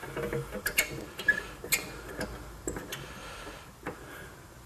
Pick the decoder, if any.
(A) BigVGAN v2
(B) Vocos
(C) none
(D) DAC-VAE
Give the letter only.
C